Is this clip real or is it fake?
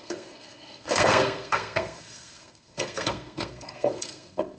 fake